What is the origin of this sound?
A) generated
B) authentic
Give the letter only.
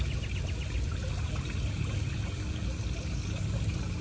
B